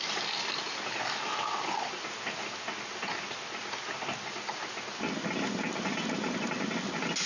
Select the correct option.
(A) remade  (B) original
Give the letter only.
B